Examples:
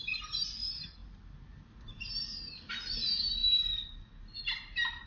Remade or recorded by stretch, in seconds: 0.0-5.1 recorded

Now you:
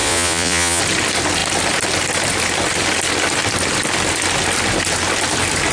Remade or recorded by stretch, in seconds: 0.0-0.8 remade; 0.8-5.7 recorded

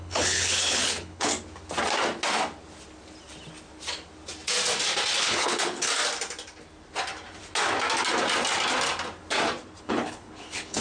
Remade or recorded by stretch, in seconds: 0.0-1.3 remade; 1.3-5.2 recorded; 5.2-5.9 remade; 5.9-9.8 recorded; 9.8-10.8 remade

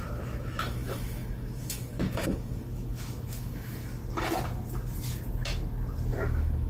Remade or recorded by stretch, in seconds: 0.0-4.0 remade; 4.0-6.1 recorded; 6.1-6.7 remade

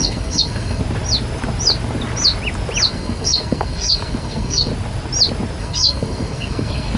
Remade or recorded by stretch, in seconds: 0.0-0.8 remade; 0.8-2.9 recorded; 2.9-4.7 remade; 4.7-5.6 recorded; 5.6-7.0 remade

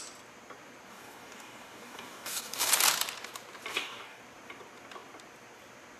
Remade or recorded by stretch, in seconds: 0.0-0.9 recorded; 0.9-2.7 remade; 2.7-3.7 recorded; 3.7-4.2 remade; 4.2-6.0 recorded

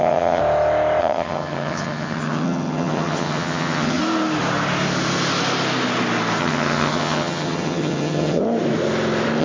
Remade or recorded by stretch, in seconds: 0.0-0.4 remade; 0.4-1.0 recorded; 1.0-4.0 remade; 4.0-6.4 recorded; 6.4-8.4 remade; 8.4-9.4 recorded